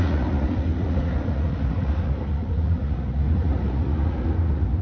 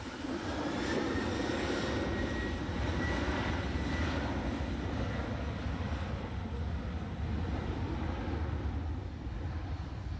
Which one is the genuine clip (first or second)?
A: second